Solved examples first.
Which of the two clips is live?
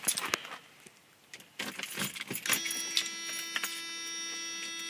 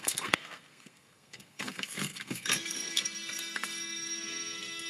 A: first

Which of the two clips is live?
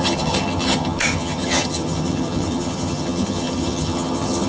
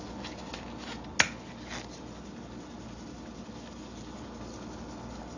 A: second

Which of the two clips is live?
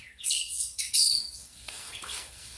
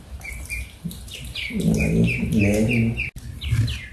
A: second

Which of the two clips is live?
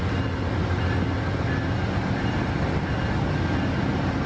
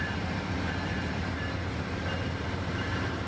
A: first